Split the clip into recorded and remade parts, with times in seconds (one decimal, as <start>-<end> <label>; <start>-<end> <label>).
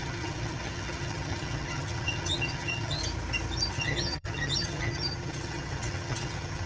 0.0-3.0 remade; 3.0-3.7 recorded; 3.7-6.7 remade